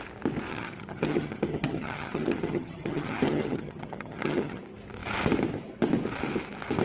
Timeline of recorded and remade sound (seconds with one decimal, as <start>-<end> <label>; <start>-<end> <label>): 0.0-0.5 recorded; 0.5-4.6 remade; 4.6-6.8 recorded